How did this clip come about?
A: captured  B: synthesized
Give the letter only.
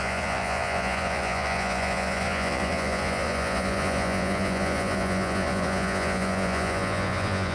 B